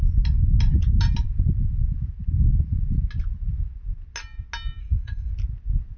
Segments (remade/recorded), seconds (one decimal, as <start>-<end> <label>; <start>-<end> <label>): 0.0-4.8 recorded; 4.8-5.3 remade; 5.3-6.0 recorded